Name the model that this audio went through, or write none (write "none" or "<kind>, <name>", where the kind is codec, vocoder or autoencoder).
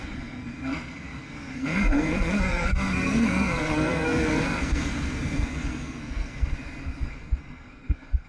codec, SNAC